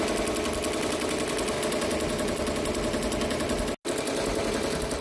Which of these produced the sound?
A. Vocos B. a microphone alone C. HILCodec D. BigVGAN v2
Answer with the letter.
B